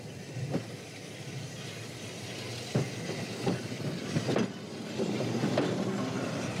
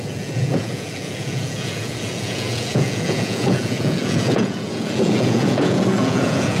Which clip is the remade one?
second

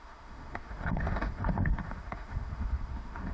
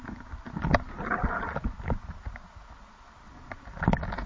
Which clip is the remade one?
first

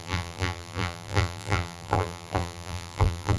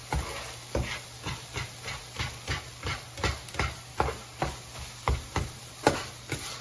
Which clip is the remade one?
first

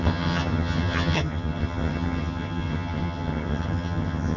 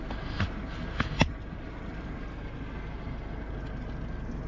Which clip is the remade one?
first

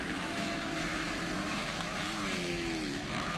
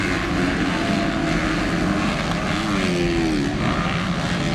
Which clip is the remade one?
first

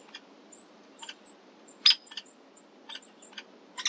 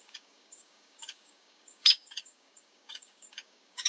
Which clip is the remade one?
second